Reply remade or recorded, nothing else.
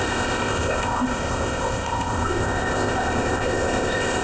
remade